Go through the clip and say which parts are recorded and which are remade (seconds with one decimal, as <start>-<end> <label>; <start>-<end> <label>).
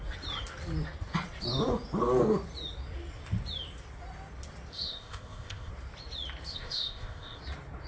0.0-4.7 recorded; 4.7-5.7 remade; 5.7-6.5 recorded; 6.5-7.4 remade; 7.4-7.9 recorded